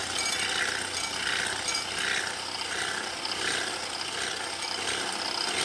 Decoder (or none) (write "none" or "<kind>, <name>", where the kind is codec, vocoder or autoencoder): none